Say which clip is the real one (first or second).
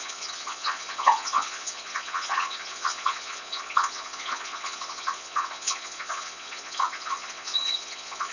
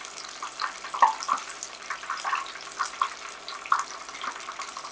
second